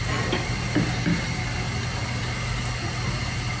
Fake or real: real